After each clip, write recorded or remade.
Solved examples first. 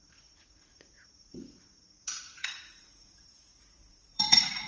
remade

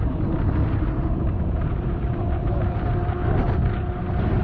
recorded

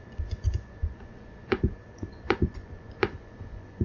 remade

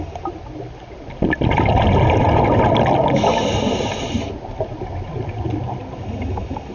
recorded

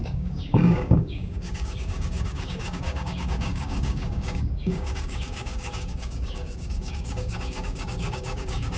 remade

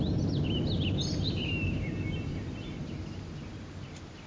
recorded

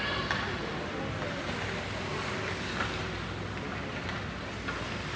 recorded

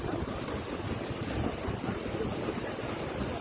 recorded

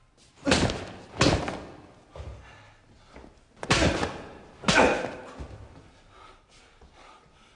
recorded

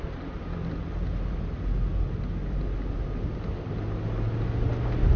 recorded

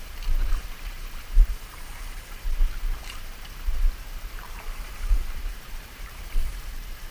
remade